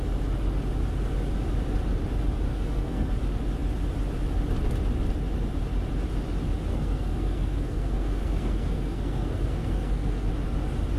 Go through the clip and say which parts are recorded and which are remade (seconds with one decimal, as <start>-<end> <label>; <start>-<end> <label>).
0.0-2.5 recorded; 2.5-3.1 remade; 3.1-6.7 recorded; 6.7-10.3 remade; 10.3-11.0 recorded